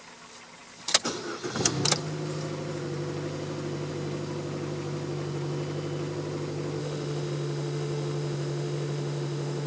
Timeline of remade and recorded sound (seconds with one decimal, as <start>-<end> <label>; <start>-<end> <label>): 0.0-6.8 recorded; 6.8-9.7 remade